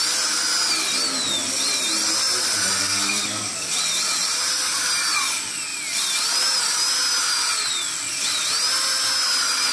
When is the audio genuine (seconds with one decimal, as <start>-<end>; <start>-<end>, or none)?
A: 0.0-2.8; 3.7-9.7